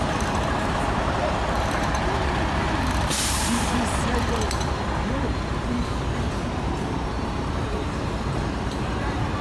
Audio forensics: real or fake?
fake